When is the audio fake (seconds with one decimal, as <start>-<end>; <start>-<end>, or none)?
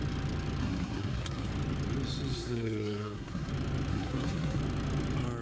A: 0.6-1.5; 2.3-3.5; 3.9-4.6